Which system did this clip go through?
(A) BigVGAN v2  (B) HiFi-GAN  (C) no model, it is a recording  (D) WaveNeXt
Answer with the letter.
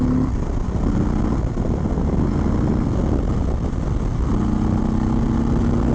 C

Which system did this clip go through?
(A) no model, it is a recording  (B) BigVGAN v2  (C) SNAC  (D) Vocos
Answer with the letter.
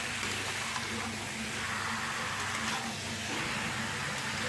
A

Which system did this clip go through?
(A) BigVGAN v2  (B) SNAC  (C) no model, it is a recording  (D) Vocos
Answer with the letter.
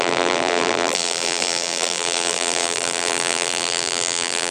A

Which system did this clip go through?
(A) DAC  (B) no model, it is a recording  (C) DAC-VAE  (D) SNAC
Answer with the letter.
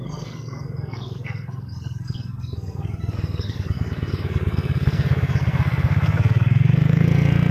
D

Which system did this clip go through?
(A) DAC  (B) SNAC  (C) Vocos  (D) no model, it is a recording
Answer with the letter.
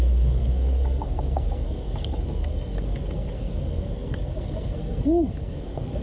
B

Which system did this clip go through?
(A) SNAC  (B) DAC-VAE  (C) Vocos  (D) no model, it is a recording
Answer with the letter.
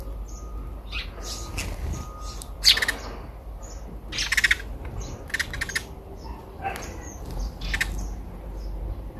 D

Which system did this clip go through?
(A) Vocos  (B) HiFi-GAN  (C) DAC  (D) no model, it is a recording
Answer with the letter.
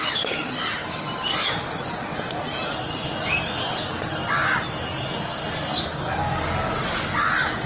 D